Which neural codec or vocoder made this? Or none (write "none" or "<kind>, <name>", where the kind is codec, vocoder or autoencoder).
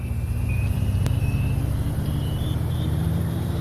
vocoder, BigVGAN v2